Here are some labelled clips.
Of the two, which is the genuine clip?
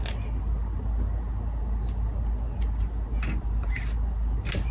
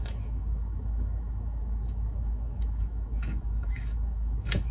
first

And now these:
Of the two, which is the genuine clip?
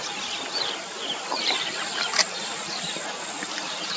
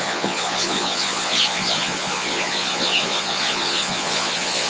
first